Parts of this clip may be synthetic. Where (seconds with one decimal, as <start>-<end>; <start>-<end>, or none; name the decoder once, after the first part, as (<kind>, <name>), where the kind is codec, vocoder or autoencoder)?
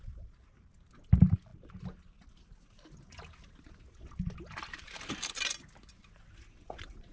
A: none